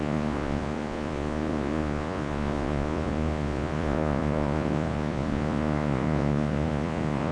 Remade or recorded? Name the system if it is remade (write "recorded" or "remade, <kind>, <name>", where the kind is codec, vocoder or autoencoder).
remade, vocoder, Vocos